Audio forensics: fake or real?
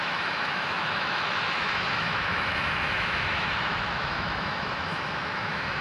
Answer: fake